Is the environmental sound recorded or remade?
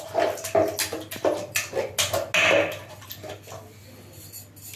recorded